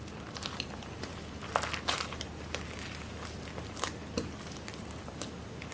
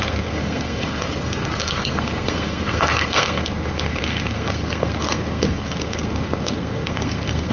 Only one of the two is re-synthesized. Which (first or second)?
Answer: second